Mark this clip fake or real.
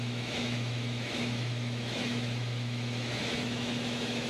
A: fake